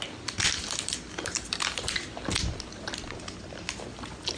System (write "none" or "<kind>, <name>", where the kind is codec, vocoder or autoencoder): none